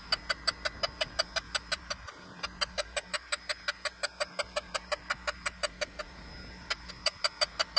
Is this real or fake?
real